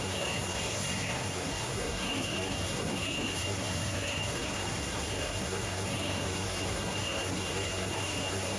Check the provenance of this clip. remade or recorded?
remade